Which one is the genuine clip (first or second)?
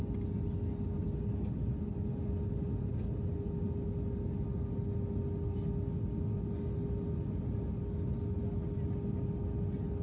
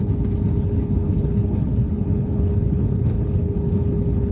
first